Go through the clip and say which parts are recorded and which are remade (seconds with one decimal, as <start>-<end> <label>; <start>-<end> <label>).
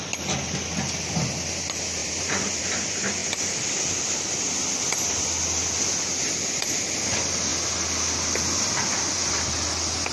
0.0-2.0 recorded; 2.0-2.6 remade; 2.6-10.1 recorded